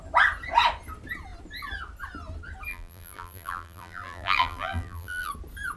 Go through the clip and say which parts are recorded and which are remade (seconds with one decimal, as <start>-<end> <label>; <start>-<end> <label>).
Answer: 0.0-2.7 recorded; 2.7-5.3 remade; 5.3-5.8 recorded